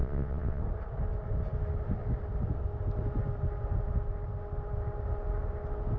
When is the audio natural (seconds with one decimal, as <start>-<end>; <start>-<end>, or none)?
0.6-6.0